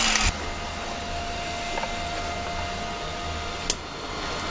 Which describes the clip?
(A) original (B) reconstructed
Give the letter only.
A